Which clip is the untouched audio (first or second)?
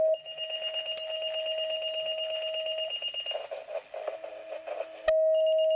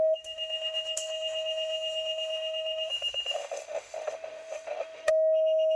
first